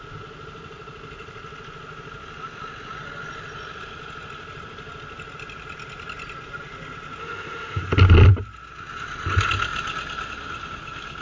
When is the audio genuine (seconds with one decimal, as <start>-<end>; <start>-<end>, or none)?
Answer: 0.0-7.2; 7.8-11.2